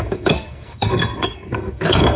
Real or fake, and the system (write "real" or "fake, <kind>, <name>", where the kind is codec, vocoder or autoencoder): fake, codec, SNAC